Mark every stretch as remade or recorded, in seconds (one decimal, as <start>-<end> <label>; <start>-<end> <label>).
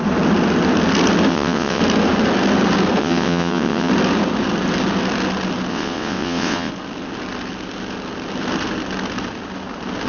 0.0-1.3 recorded; 1.3-1.8 remade; 1.8-3.0 recorded; 3.0-3.9 remade; 3.9-5.7 recorded; 5.7-6.7 remade; 6.7-10.1 recorded